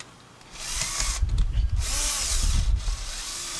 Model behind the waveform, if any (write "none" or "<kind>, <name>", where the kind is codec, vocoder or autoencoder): none